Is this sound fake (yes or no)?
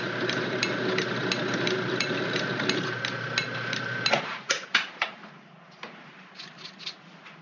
no